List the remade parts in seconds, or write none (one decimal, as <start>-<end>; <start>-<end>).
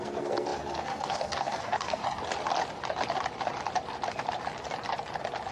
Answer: 0.0-2.0